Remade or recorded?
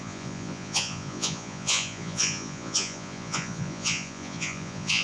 remade